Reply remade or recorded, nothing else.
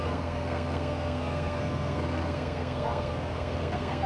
remade